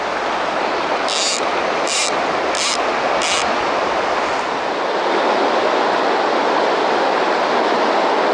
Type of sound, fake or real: real